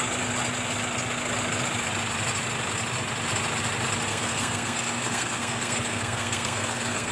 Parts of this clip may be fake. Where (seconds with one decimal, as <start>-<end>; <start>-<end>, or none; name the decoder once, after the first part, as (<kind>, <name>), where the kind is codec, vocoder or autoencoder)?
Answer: 4.1-7.1 (codec, SNAC)